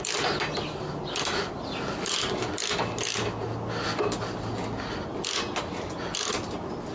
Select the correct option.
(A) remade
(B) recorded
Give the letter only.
B